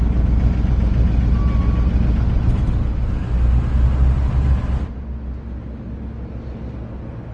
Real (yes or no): yes